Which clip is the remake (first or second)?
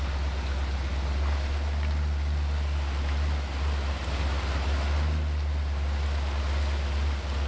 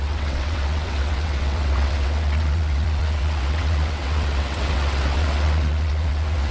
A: second